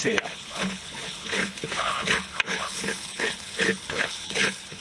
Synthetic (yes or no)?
yes